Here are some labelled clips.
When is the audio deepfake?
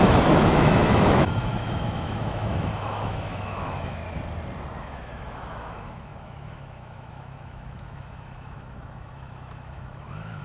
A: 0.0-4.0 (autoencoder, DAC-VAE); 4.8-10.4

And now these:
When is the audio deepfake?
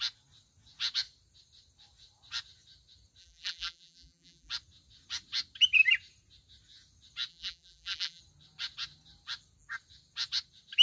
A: 3.2-4.5 (vocoder, BigVGAN v2); 7.3-8.2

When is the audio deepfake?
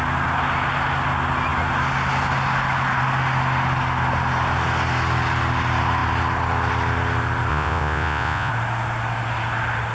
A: 7.5-8.5 (vocoder, Vocos)